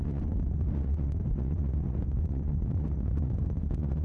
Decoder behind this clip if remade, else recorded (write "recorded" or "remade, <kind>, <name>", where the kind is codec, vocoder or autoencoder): remade, vocoder, Vocos